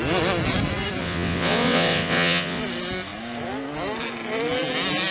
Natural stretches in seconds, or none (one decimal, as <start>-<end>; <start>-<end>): 0.0-1.0; 2.6-5.1